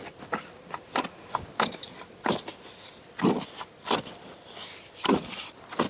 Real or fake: real